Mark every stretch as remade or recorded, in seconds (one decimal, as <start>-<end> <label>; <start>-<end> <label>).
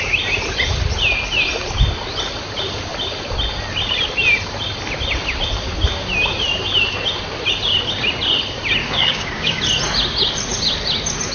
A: 0.0-8.8 recorded; 8.8-9.6 remade; 9.6-11.3 recorded